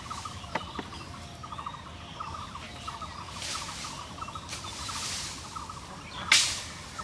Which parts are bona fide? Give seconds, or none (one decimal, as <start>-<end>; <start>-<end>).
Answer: 0.0-7.0

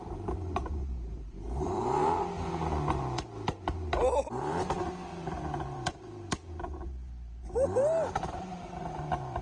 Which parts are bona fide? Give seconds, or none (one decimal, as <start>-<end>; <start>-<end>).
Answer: 2.0-5.7

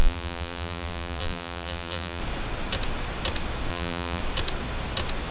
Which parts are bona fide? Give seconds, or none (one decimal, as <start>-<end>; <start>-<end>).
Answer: 2.2-3.7; 4.2-5.3

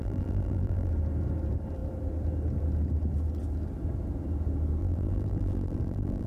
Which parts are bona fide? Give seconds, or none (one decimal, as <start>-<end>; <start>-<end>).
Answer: 0.9-4.8

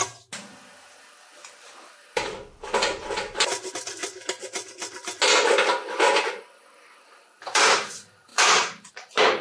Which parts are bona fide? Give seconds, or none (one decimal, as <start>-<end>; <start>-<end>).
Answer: 4.0-7.0